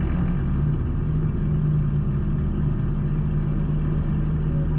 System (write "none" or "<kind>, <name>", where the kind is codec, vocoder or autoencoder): none